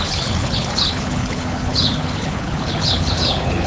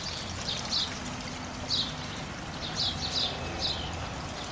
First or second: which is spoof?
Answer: first